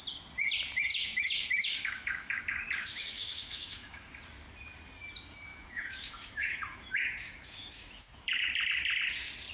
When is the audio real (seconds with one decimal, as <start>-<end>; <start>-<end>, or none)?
0.0-0.9; 2.4-2.8; 4.1-5.5; 8.5-9.5